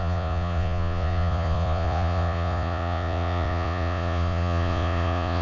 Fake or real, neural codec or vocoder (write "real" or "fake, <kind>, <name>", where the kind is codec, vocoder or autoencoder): fake, vocoder, Vocos